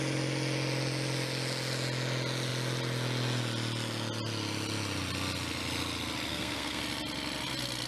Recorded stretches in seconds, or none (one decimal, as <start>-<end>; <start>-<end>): 0.0-6.3; 6.8-7.9